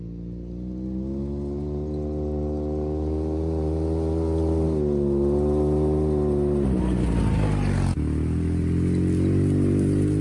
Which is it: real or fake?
real